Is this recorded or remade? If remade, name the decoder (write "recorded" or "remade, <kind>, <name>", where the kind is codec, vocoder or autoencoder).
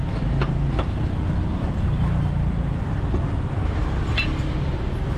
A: remade, vocoder, BigVGAN v2